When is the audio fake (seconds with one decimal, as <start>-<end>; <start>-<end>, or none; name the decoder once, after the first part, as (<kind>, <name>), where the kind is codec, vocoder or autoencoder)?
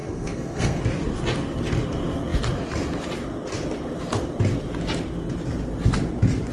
0.0-0.8 (codec, SNAC)